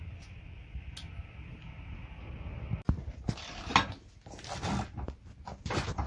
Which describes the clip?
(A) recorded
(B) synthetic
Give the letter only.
A